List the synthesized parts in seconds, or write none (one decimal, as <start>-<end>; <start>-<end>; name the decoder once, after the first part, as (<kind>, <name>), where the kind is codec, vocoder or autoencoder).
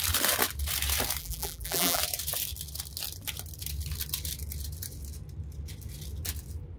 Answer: 1.2-2.0 (vocoder, BigVGAN v2)